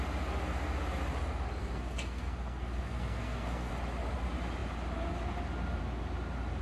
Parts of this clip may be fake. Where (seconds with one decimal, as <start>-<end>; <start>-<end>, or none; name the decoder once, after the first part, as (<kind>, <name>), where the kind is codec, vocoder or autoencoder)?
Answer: 1.6-3.7 (codec, SNAC)